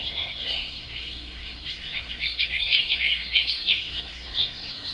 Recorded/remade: remade